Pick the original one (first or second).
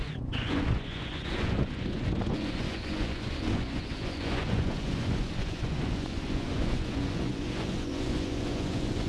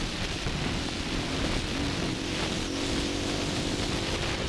second